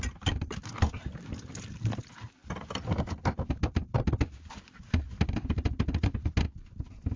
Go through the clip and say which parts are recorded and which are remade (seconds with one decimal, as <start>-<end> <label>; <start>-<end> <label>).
0.0-7.2 recorded